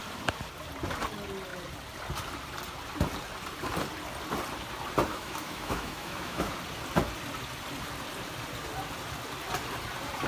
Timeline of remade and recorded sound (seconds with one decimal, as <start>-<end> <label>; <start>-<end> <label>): 0.0-5.1 recorded; 5.1-6.5 remade; 6.5-10.3 recorded